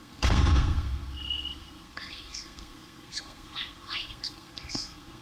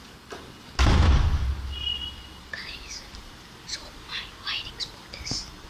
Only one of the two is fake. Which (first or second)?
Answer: first